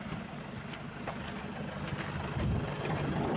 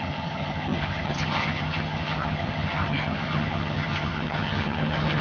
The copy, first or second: second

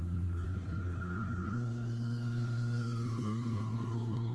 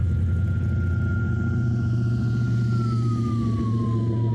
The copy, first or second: first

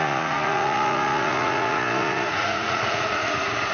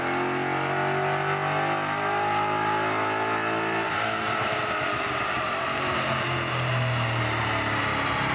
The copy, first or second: first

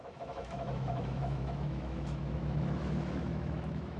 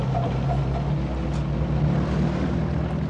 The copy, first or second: first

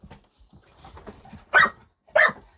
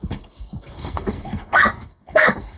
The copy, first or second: second